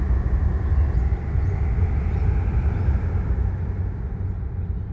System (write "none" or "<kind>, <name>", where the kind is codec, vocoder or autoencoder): none